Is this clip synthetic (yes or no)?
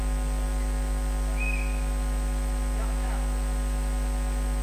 no